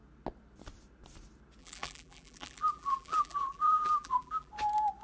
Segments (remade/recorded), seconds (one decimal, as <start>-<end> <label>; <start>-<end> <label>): 0.0-1.6 recorded; 1.6-4.5 remade; 4.5-5.0 recorded